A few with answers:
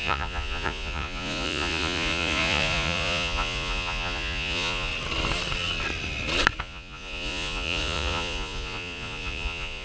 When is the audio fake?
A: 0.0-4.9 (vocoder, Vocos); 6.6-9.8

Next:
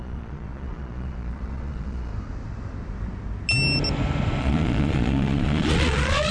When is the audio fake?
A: 0.0-2.1 (vocoder, Vocos); 4.4-6.3

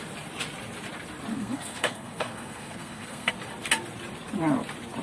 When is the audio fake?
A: 1.3-3.3 (codec, SNAC)

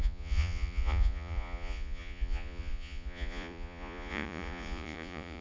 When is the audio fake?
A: 0.0-5.4 (vocoder, Vocos)

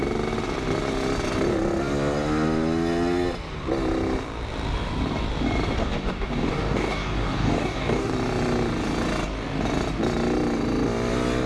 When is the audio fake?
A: 5.8-8.1 (codec, DAC)

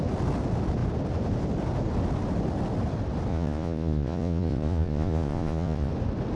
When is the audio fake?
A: 3.3-5.9 (vocoder, Vocos)

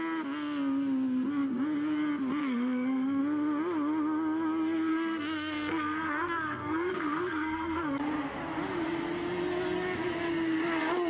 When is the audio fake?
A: 2.4-3.2 (codec, SNAC); 4.9-8.0